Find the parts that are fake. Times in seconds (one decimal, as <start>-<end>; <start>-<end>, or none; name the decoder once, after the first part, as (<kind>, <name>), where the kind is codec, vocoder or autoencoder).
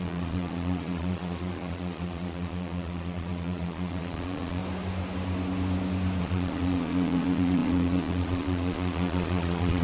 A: 0.0-4.6 (vocoder, Vocos); 6.2-9.8